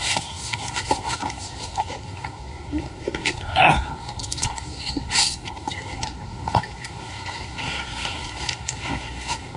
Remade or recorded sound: remade